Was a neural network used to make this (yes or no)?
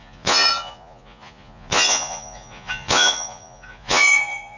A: yes